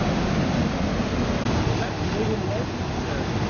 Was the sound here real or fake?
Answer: real